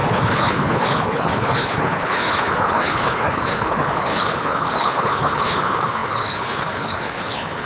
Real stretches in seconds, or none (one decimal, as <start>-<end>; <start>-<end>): none